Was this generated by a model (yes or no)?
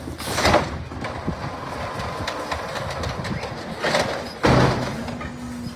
no